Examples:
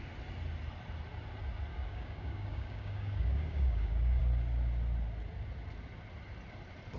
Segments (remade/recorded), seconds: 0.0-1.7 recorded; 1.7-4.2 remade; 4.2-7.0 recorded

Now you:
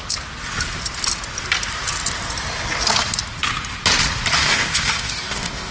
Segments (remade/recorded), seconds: 0.0-4.4 recorded; 4.4-5.7 remade

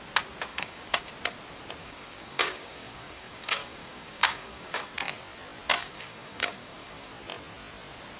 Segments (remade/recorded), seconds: 0.0-0.5 recorded; 0.5-1.1 remade; 1.1-1.8 recorded; 1.8-4.9 remade; 4.9-5.8 recorded; 5.8-7.1 remade; 7.1-8.2 recorded

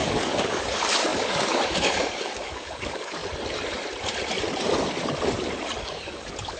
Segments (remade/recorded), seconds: 0.0-3.2 remade; 3.2-5.8 recorded; 5.8-6.6 remade

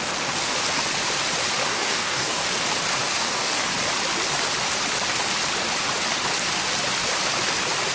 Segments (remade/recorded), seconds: 0.0-1.7 recorded; 1.7-2.5 remade; 2.5-3.0 recorded; 3.0-3.6 remade; 3.6-7.9 recorded

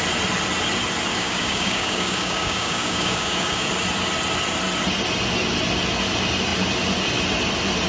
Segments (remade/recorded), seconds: 0.0-1.1 recorded; 1.1-3.7 remade; 3.7-7.9 recorded

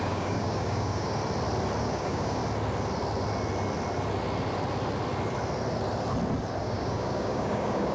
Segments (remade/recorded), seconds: 0.0-1.2 remade; 1.2-1.8 recorded; 1.8-2.4 remade; 2.4-6.6 recorded; 6.6-7.9 remade

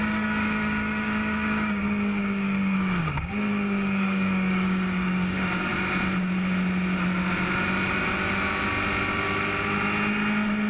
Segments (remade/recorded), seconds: 0.0-5.7 remade; 5.7-10.7 recorded